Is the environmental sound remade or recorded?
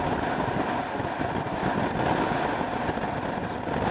recorded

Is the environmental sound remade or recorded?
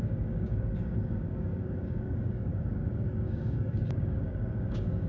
remade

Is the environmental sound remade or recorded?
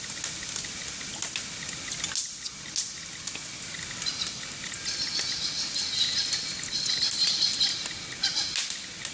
recorded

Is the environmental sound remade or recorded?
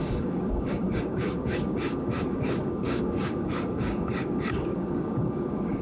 remade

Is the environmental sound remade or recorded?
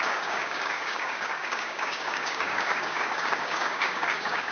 remade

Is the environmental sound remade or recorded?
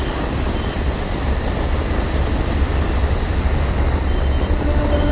recorded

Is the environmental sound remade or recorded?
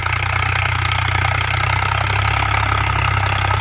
recorded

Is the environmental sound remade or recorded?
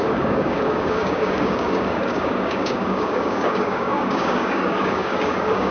remade